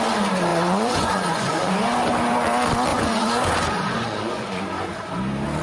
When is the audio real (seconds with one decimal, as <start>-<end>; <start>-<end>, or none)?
0.0-0.5; 1.7-2.9; 4.6-5.6